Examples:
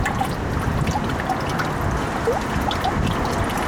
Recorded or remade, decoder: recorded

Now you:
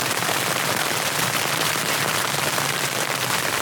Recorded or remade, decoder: remade, vocoder, BigVGAN v2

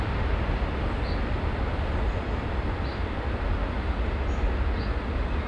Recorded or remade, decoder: recorded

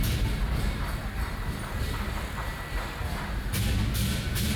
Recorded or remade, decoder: recorded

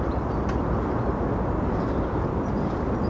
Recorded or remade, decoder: recorded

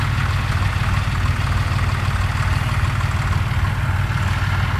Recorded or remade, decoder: recorded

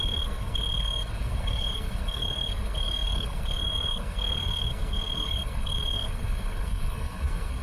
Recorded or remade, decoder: remade, codec, SNAC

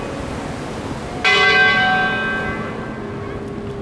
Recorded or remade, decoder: recorded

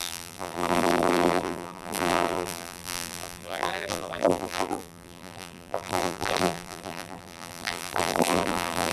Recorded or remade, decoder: remade, vocoder, BigVGAN v2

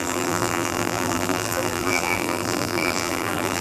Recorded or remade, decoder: remade, vocoder, BigVGAN v2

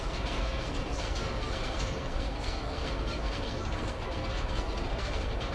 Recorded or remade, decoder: remade, codec, SNAC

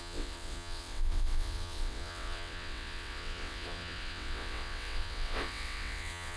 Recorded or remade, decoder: remade, vocoder, WaveNeXt